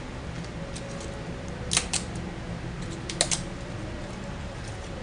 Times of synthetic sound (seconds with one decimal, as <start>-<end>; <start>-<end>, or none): 4.0-5.0